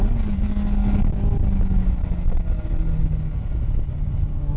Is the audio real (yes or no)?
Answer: yes